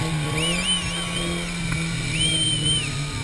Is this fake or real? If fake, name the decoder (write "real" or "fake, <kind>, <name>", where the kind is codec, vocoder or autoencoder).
real